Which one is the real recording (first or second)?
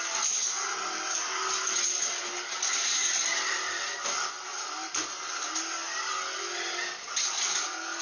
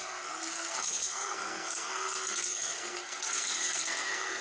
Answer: first